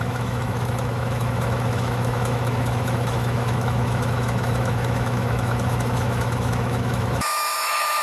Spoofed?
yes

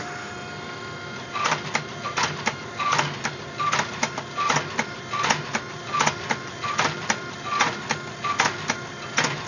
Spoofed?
no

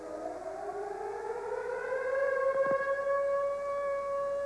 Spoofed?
no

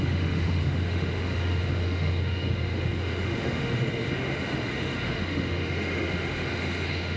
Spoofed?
yes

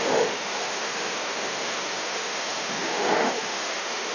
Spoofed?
yes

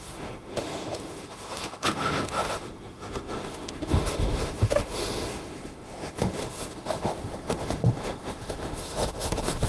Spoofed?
yes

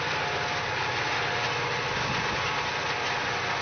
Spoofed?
no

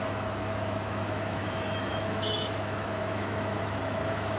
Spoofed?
yes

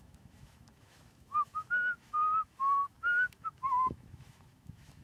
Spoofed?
yes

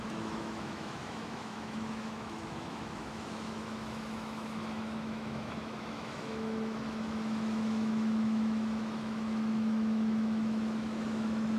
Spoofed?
yes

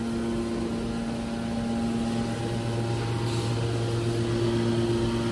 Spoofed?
no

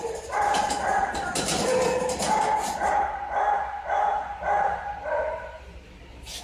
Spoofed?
no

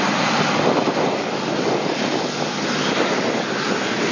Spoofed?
no